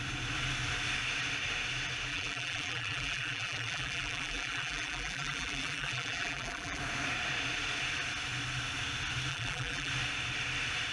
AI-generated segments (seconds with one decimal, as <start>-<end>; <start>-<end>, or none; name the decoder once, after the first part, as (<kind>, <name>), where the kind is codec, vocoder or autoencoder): 2.1-6.8 (vocoder, BigVGAN v2); 9.3-9.9